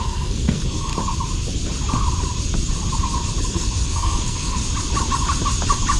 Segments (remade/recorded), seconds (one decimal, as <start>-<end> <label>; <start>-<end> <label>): 0.0-0.9 remade; 0.9-3.4 recorded; 3.4-4.6 remade; 4.6-6.0 recorded